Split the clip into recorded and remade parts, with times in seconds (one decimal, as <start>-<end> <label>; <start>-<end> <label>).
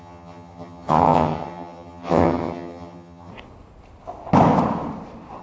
0.0-3.3 remade; 3.3-5.4 recorded